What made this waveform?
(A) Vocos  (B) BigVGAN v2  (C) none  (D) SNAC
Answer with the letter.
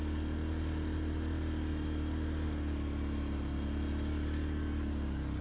C